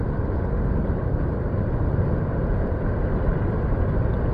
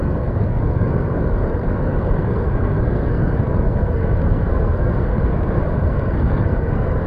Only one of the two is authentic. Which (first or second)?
first